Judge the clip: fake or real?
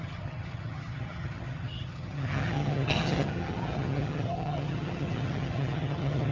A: fake